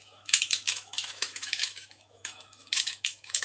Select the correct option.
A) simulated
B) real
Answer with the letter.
A